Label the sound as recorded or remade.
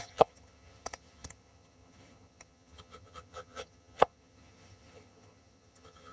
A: remade